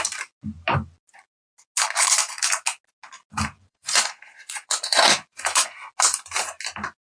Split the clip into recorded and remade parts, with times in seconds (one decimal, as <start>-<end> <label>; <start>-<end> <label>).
0.0-3.6 recorded; 3.6-5.9 remade; 5.9-7.2 recorded